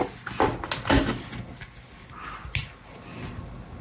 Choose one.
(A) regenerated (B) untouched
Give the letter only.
B